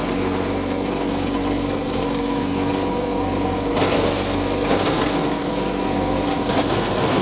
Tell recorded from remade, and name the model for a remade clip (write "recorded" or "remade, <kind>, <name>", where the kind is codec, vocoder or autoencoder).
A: remade, codec, SNAC